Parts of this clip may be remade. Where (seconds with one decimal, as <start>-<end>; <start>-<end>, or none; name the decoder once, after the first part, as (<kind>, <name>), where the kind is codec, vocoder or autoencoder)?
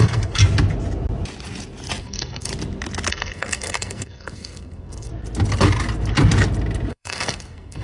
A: 0.0-0.4 (codec, SNAC); 2.0-2.5; 3.1-5.1; 6.9-7.8